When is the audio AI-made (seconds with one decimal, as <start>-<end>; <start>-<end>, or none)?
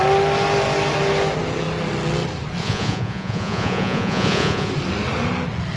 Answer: 2.6-4.7